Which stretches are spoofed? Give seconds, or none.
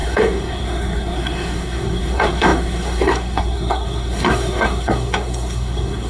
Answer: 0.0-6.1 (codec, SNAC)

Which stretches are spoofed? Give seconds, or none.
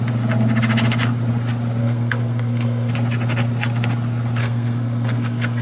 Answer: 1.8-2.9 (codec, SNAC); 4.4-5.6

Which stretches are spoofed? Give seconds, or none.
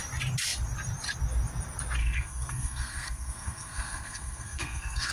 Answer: 2.0-5.1 (codec, SNAC)